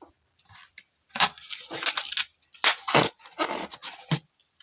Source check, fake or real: real